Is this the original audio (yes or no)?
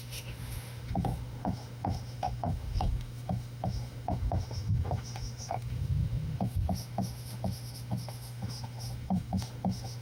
no